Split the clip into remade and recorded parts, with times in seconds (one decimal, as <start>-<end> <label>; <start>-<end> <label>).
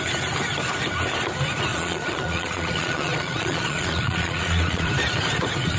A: 0.0-1.7 recorded; 1.7-4.9 remade; 4.9-5.8 recorded